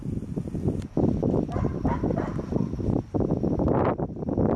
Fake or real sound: real